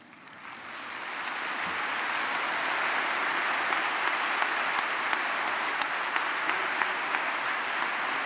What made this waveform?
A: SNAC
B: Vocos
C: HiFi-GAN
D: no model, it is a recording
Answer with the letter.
D